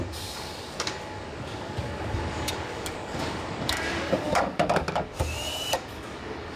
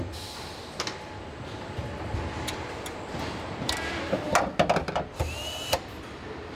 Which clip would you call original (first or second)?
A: second